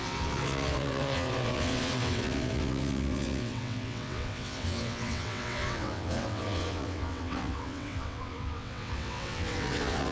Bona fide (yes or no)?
no